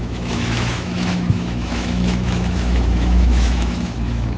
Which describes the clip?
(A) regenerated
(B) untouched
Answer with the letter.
A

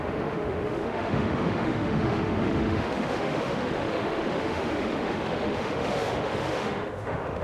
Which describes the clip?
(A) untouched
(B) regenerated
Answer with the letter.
B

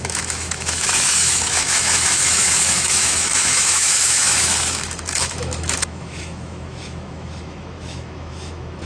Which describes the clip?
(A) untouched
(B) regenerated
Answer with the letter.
B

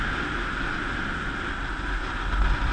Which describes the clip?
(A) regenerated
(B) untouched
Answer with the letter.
B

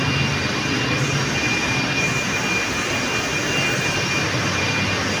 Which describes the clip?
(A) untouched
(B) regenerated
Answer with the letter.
A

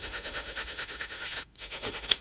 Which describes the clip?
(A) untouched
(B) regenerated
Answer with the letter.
B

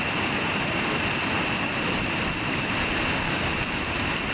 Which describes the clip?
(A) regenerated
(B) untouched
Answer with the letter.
B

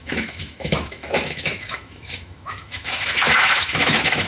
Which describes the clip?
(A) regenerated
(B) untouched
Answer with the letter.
A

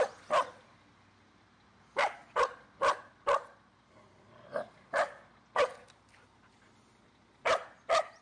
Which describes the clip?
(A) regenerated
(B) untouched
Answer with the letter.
B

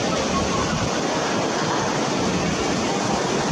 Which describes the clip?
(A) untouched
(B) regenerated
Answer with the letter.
A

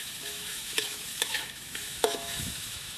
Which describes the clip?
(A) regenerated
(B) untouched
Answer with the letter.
A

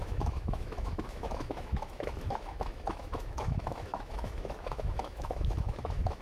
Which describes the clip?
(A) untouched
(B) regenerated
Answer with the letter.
B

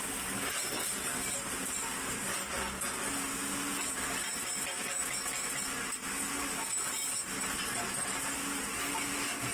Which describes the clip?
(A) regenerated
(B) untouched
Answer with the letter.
B